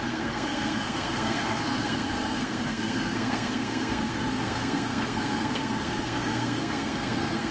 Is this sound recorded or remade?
remade